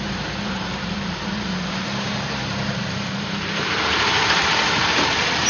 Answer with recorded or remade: remade